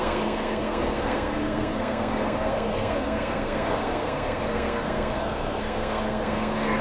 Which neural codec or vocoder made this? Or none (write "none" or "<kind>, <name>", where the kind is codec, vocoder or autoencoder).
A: codec, SNAC